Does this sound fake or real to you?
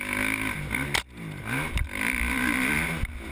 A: real